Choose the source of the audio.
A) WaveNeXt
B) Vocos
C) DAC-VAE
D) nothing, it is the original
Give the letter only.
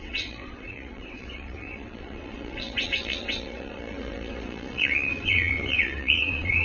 A